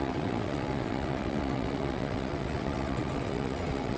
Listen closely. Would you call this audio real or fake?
fake